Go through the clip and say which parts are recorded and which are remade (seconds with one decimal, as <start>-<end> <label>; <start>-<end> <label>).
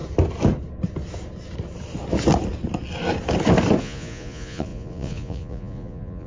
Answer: 0.0-3.8 recorded; 3.8-6.3 remade